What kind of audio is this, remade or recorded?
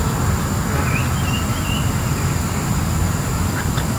recorded